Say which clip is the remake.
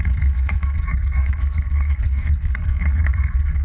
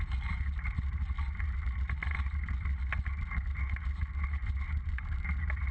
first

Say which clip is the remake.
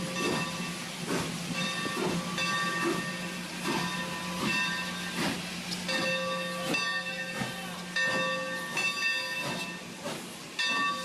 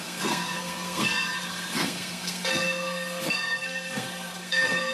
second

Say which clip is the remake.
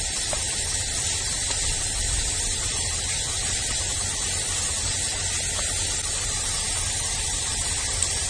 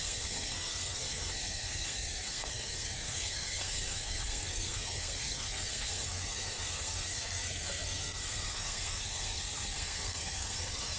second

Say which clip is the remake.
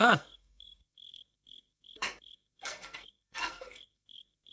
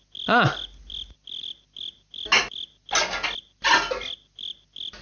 first